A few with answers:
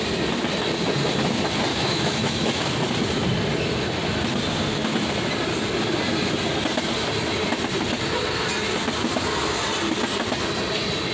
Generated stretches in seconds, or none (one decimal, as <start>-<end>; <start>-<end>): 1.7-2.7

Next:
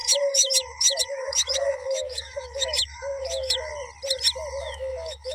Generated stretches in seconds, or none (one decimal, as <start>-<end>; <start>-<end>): 0.0-3.7; 4.6-5.3

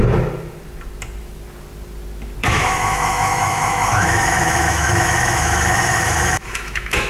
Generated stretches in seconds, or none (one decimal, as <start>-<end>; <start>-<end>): 2.4-7.1